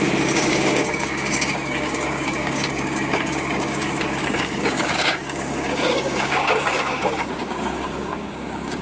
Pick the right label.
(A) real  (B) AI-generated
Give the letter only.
B